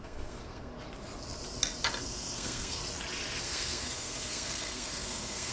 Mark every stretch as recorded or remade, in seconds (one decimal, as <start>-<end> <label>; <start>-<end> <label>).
0.0-0.7 remade; 0.7-2.0 recorded; 2.0-2.8 remade; 2.8-3.4 recorded; 3.4-5.5 remade